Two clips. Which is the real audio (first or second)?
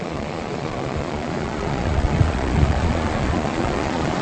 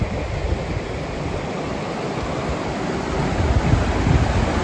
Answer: second